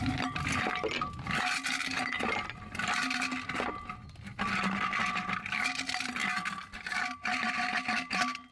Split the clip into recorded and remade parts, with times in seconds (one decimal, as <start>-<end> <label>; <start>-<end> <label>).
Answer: 0.0-8.5 recorded